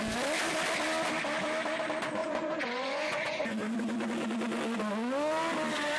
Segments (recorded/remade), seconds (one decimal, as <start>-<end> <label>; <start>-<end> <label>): 0.0-2.2 recorded; 2.2-3.6 remade; 3.6-6.0 recorded